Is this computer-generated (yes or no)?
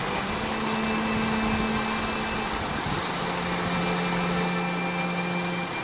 no